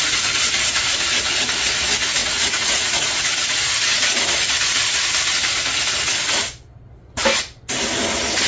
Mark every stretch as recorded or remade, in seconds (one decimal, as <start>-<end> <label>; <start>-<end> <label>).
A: 0.0-2.2 recorded; 2.2-3.3 remade; 3.3-8.5 recorded